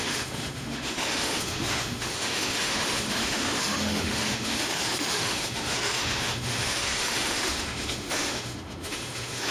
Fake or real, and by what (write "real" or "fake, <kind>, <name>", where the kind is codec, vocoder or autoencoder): fake, autoencoder, DAC-VAE